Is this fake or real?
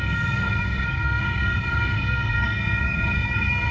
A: fake